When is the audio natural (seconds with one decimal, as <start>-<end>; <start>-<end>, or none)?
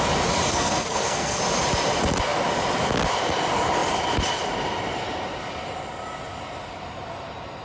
0.0-0.5; 1.4-7.6